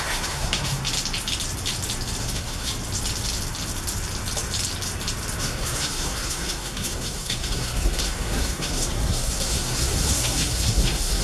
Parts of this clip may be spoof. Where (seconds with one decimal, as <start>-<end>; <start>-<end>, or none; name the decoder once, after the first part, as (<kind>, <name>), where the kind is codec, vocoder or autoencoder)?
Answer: 0.0-0.8 (codec, SNAC); 2.2-2.7; 5.4-11.2